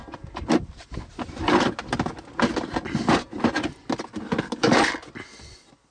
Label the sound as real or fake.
real